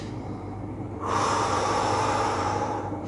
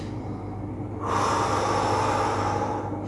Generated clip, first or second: first